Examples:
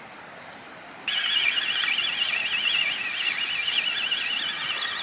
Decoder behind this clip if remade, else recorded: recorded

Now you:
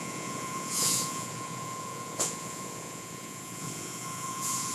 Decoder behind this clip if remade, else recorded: remade, vocoder, Vocos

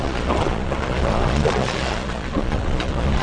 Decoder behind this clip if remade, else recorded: remade, vocoder, Vocos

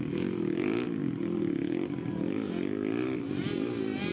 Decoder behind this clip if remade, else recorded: recorded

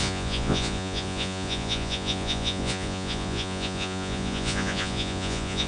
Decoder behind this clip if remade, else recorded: remade, vocoder, Vocos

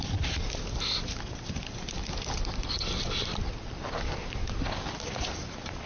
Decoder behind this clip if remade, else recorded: recorded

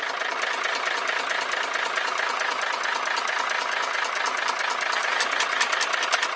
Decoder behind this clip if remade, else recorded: recorded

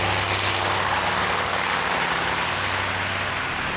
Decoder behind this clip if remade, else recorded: recorded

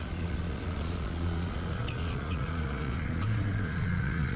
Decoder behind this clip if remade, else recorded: remade, vocoder, Vocos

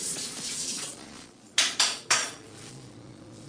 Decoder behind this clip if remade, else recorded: remade, vocoder, Vocos